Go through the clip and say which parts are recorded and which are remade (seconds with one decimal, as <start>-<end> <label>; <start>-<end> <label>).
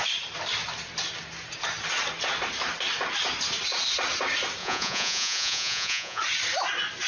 0.0-4.6 recorded; 4.6-6.2 remade; 6.2-7.1 recorded